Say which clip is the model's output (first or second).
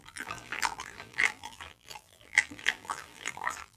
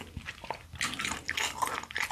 first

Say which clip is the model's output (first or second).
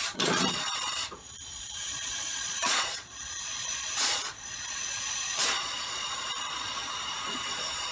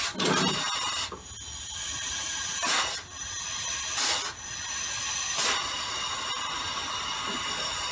first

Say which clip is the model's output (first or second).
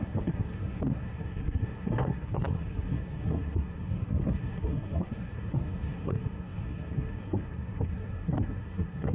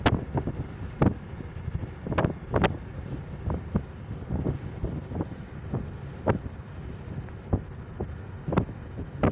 first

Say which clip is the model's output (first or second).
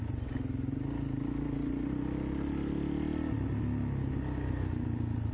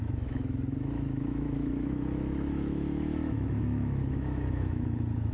second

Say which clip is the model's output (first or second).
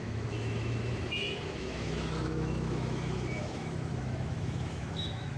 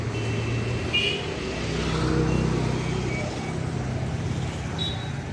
first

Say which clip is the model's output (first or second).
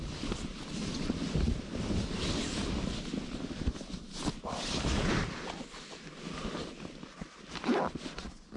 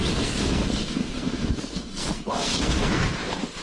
second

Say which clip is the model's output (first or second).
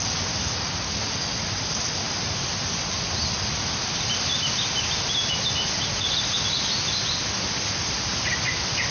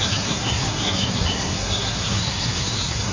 second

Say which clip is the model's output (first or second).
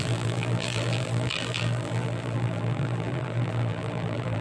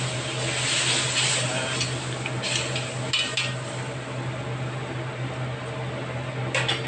first